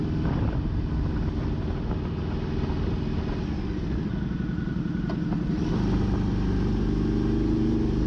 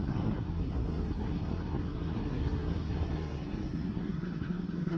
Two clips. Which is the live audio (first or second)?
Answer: first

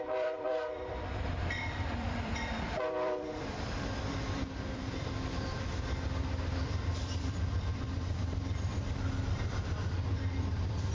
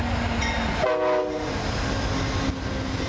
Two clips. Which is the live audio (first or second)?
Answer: second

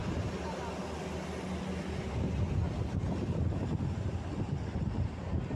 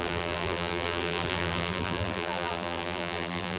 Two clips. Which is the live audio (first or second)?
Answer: first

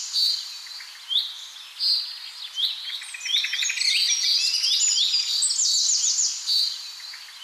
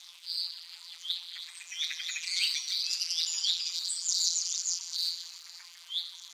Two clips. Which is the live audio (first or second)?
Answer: first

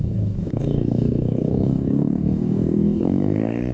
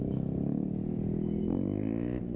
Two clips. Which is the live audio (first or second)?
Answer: second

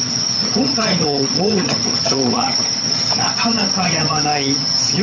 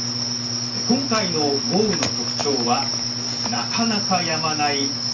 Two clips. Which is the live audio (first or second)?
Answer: second